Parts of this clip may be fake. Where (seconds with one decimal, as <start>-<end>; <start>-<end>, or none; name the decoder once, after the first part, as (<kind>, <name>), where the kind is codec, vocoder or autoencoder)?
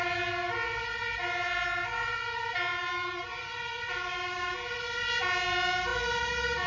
none